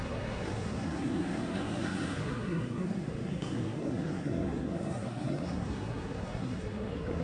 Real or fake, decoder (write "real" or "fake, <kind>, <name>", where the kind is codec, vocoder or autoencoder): fake, codec, SNAC